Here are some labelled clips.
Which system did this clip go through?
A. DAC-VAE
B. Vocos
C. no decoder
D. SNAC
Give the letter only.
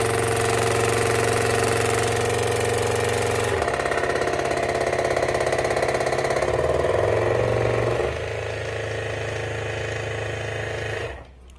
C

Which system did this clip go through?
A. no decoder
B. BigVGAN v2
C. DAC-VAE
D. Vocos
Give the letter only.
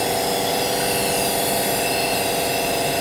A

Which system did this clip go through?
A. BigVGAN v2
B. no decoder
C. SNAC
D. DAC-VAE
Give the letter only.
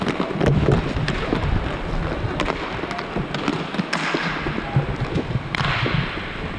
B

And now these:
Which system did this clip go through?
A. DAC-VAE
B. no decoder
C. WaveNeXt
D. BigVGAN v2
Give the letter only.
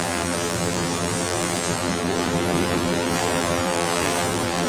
D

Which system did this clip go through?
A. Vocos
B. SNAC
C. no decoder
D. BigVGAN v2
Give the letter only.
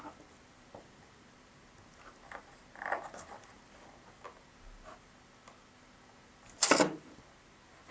C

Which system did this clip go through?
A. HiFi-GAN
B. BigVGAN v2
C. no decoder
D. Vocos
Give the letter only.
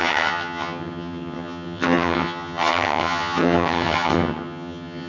A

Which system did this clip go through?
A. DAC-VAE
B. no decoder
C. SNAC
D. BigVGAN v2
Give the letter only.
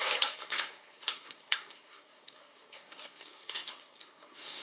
C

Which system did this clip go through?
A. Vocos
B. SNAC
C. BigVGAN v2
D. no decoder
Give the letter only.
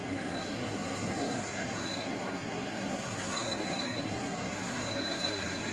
B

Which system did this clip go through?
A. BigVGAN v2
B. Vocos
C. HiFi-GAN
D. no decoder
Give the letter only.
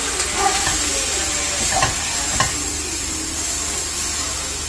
D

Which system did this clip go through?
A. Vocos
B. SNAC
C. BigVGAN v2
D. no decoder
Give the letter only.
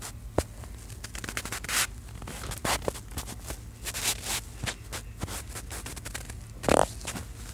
D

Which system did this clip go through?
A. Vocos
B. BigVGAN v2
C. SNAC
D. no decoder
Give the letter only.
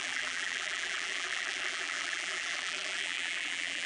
B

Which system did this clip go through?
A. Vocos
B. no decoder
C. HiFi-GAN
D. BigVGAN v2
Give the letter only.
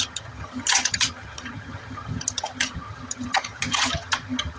C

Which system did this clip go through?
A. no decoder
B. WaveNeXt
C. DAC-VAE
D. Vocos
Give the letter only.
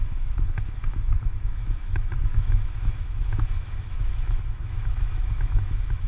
C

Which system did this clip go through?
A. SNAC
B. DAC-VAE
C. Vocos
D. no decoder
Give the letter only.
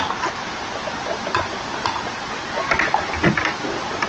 D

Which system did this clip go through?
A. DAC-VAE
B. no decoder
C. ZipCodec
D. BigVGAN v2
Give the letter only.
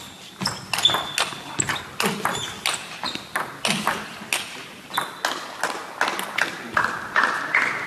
B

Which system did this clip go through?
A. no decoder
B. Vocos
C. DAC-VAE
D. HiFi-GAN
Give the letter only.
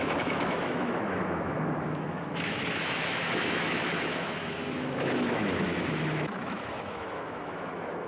C